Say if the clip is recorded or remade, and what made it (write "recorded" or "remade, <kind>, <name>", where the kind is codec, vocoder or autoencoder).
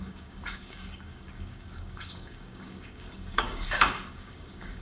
remade, codec, DAC